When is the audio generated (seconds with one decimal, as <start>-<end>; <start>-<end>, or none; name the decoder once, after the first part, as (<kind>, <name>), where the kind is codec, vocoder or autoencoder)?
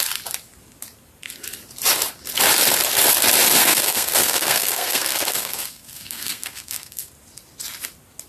3.6-7.1 (codec, SNAC)